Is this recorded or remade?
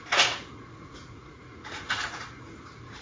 remade